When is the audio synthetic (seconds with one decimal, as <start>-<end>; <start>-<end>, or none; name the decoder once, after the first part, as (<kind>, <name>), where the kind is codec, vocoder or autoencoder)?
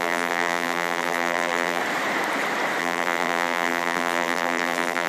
0.0-1.8 (vocoder, BigVGAN v2); 2.8-5.1